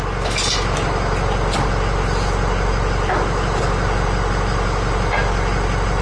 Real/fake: real